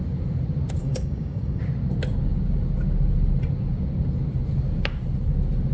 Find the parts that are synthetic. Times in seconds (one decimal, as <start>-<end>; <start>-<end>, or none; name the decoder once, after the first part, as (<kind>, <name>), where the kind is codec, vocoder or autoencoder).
0.8-1.6 (codec, DAC)